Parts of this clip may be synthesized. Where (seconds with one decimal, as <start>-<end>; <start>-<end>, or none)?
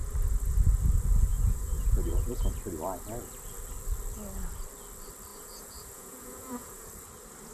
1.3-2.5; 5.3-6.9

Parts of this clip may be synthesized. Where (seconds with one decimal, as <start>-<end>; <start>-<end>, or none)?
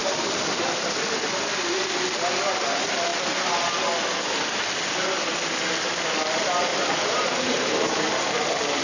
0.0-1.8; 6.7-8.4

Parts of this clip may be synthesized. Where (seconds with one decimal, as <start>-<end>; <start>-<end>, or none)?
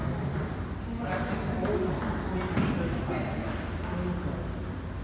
none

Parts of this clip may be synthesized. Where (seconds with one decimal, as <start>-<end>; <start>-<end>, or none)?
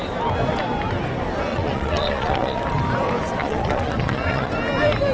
1.5-2.6; 3.4-4.5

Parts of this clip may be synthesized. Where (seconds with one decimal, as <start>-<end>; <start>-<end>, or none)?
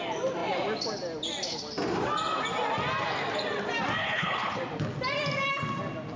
4.0-4.6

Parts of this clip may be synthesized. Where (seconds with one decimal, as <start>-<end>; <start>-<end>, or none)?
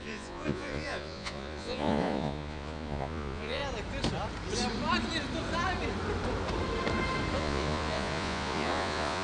0.0-3.6; 7.4-9.2